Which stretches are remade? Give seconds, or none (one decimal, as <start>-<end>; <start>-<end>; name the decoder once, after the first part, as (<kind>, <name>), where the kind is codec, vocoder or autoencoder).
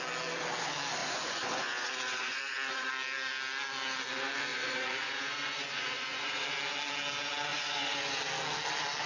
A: 1.0-2.9 (vocoder, Vocos); 4.5-6.4; 7.5-8.1